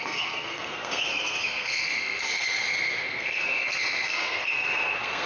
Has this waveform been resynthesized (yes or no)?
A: yes